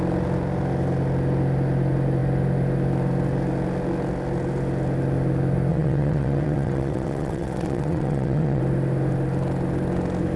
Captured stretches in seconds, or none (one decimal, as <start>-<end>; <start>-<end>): 0.0-5.7; 8.6-10.4